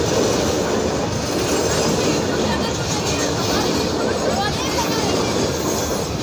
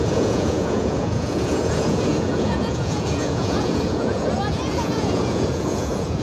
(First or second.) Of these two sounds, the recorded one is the first